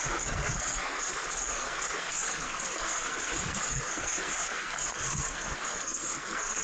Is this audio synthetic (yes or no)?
yes